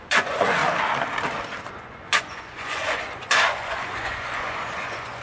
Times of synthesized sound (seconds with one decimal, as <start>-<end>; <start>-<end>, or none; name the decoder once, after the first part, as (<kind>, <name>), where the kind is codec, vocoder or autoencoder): 0.0-0.6 (vocoder, Vocos); 1.7-5.2